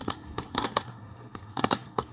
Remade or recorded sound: remade